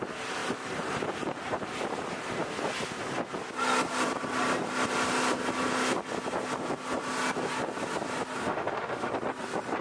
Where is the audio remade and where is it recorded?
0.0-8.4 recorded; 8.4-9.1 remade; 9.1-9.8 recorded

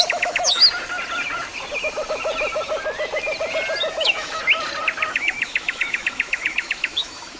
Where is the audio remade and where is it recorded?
0.0-0.6 remade; 0.6-3.9 recorded; 3.9-4.4 remade; 4.4-5.1 recorded; 5.1-7.4 remade

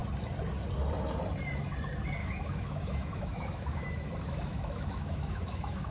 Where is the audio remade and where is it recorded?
0.0-2.2 recorded; 2.2-5.9 remade

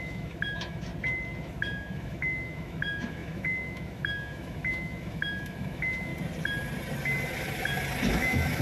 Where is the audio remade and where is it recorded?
0.0-0.9 remade; 0.9-1.4 recorded; 1.4-6.1 remade; 6.1-8.1 recorded; 8.1-8.6 remade